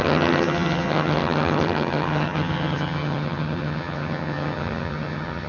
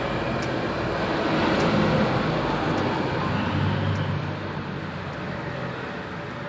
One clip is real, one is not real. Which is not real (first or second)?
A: first